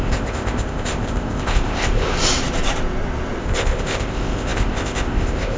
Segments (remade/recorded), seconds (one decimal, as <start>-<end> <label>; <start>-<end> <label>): 0.0-2.1 remade; 2.1-3.4 recorded; 3.4-5.6 remade